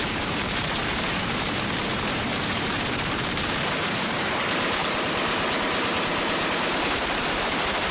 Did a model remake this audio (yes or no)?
yes